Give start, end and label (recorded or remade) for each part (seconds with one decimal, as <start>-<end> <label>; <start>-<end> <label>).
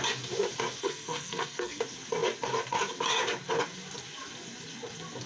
0.0-0.8 recorded; 0.8-1.8 remade; 1.8-5.3 recorded